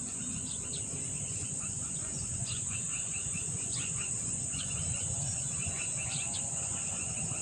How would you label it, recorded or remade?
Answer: remade